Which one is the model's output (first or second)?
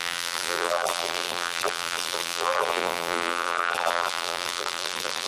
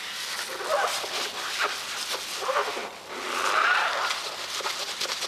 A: first